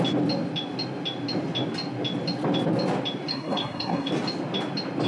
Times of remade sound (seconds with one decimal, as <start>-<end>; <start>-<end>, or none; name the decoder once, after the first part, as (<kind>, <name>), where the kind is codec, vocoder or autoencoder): 3.3-4.1 (codec, SNAC)